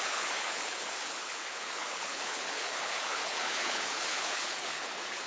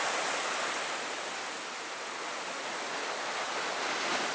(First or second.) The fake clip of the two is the first